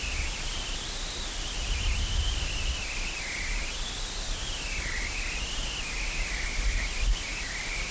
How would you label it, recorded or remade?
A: recorded